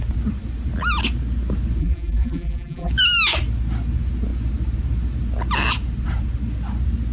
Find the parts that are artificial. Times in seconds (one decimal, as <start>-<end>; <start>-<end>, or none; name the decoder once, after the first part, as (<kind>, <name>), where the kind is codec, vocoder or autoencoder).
1.8-2.9 (vocoder, BigVGAN v2)